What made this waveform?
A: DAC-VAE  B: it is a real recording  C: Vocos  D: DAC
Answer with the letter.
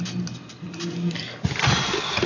B